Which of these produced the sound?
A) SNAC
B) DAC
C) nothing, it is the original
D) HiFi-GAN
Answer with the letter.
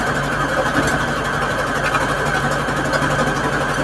C